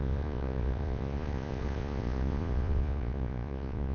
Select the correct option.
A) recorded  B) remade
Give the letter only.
B